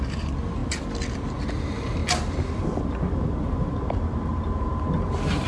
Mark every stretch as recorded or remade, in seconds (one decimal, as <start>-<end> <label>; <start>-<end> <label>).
0.0-5.5 recorded